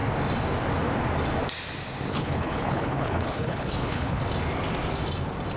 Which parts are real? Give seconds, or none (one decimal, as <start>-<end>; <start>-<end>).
0.0-2.1; 4.2-5.6